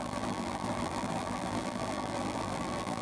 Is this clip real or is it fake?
fake